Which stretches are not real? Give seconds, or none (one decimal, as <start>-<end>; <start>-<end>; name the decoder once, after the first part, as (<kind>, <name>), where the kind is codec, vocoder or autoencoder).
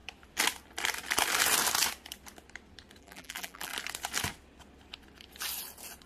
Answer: 3.0-3.7 (vocoder, BigVGAN v2)